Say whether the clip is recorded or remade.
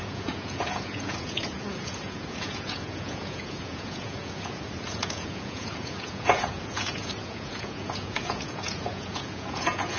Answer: remade